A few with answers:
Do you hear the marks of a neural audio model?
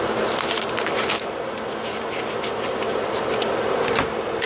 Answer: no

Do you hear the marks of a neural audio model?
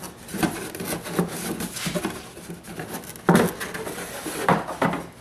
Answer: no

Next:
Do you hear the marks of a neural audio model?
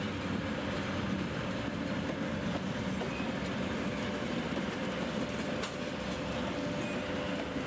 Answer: no